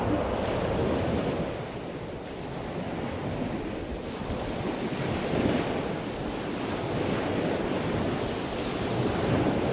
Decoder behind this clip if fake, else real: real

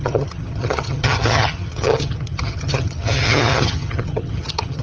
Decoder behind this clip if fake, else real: fake, vocoder, HiFi-GAN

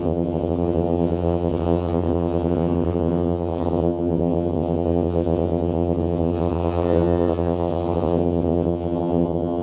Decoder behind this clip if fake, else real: fake, vocoder, HiFi-GAN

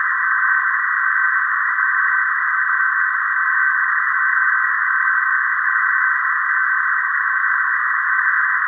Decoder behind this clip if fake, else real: real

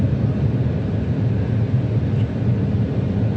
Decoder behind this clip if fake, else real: real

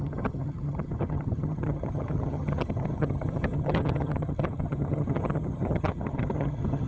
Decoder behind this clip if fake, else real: fake, vocoder, HiFi-GAN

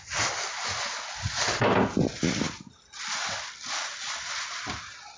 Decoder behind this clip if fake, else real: real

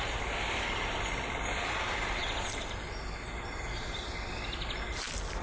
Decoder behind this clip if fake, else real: real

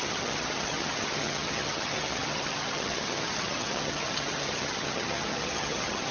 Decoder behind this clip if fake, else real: fake, vocoder, HiFi-GAN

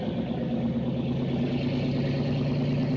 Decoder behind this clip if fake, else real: real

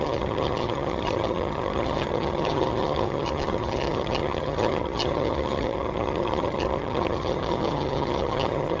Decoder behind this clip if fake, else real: fake, vocoder, HiFi-GAN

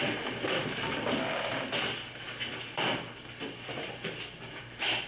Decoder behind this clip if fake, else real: real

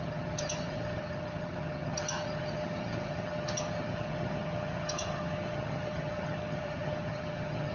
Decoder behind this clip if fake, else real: fake, vocoder, HiFi-GAN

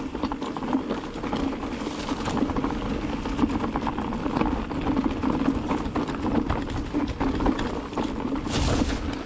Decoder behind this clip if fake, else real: real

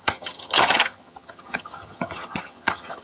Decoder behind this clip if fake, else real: fake, vocoder, HiFi-GAN